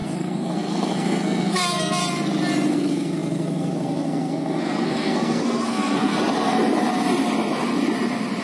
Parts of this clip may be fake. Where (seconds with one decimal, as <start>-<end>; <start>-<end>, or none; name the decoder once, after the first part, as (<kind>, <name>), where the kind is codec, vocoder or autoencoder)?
0.0-2.0 (codec, SNAC); 2.7-6.1